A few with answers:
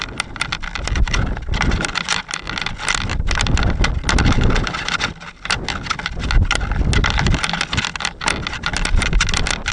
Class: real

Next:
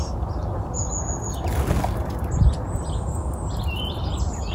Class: real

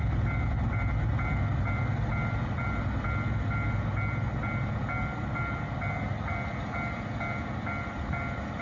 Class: real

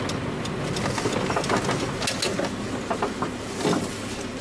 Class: real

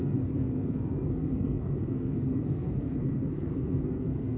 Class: fake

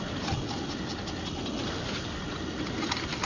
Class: real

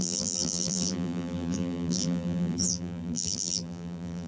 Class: fake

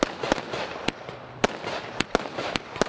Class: real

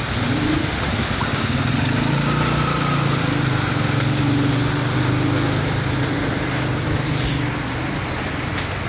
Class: real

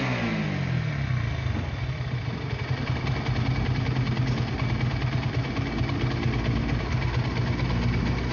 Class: real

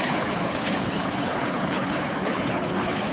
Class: fake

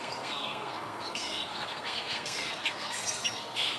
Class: fake